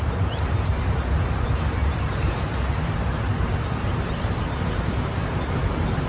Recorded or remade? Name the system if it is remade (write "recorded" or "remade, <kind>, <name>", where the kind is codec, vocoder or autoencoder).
remade, vocoder, BigVGAN v2